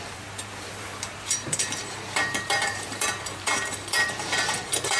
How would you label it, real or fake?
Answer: fake